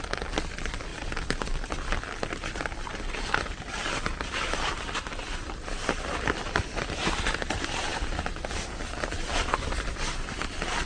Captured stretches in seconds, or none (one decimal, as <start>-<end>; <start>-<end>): 0.0-10.9